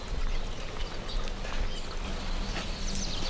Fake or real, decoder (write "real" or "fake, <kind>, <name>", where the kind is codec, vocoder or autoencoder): real